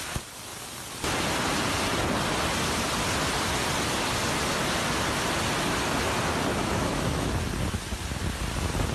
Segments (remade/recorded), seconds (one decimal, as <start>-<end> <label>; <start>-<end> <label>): 0.0-6.5 recorded; 6.5-7.3 remade; 7.3-8.9 recorded